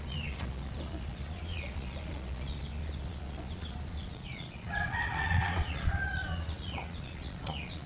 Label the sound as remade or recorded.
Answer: remade